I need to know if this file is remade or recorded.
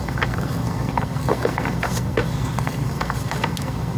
remade